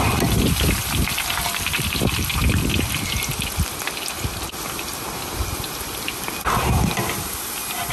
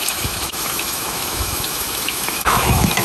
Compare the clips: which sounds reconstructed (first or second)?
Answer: second